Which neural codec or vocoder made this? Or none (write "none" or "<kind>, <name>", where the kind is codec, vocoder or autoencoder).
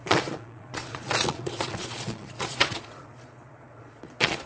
vocoder, Vocos